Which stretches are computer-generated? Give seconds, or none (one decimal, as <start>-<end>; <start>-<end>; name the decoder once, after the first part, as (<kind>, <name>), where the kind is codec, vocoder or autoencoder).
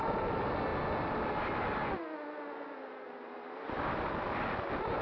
none